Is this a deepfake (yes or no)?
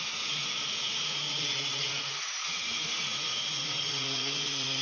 yes